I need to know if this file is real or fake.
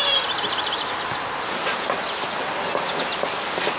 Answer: real